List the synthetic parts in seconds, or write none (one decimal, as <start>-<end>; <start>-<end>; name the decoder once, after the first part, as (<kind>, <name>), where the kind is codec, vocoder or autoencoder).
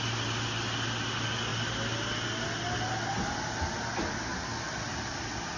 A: none